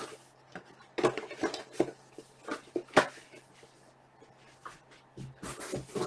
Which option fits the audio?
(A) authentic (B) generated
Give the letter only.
A